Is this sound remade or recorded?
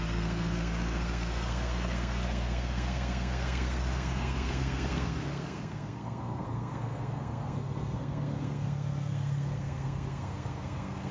remade